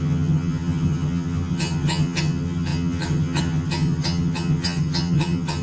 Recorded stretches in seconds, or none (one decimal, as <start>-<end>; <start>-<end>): none